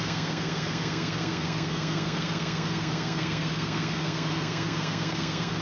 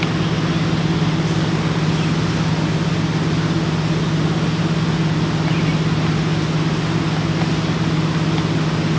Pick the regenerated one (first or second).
first